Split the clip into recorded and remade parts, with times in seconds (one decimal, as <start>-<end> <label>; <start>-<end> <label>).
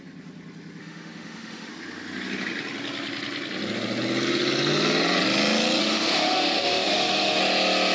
0.0-0.8 recorded; 0.8-1.7 remade; 1.7-5.8 recorded; 5.8-7.4 remade; 7.4-7.9 recorded